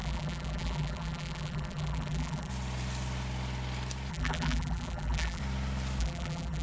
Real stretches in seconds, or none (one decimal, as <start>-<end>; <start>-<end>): 2.5-4.1; 5.4-6.0